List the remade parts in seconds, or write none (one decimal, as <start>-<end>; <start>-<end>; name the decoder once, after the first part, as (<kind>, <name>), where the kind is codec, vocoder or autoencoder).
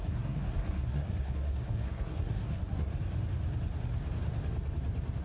0.0-2.9 (codec, SNAC)